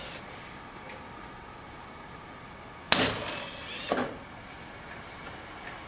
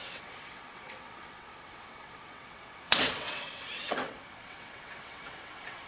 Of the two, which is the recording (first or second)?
first